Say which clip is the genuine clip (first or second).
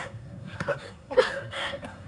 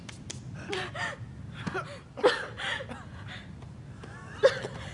second